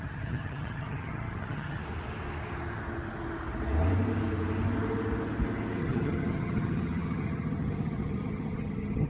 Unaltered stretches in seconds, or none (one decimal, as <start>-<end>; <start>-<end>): 1.8-5.8